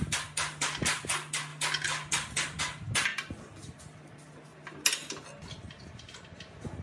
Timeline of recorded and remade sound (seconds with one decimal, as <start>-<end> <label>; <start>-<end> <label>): 0.0-6.8 recorded